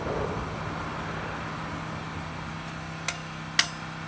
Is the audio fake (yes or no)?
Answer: no